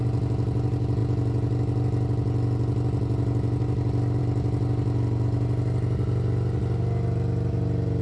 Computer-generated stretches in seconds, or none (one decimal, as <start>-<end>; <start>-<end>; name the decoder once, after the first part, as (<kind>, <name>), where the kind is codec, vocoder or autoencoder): none